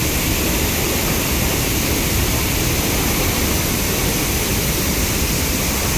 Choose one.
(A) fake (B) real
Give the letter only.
B